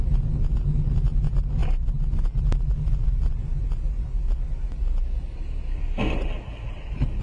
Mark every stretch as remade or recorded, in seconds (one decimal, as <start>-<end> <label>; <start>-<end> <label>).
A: 0.0-7.2 recorded